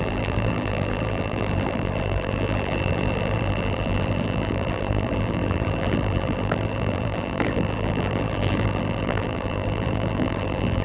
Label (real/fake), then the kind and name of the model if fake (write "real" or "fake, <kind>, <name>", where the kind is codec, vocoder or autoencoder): fake, vocoder, BigVGAN v2